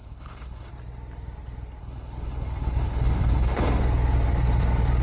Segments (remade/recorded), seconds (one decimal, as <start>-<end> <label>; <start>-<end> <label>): 0.0-0.7 remade; 0.7-1.8 recorded; 1.8-3.8 remade; 3.8-5.0 recorded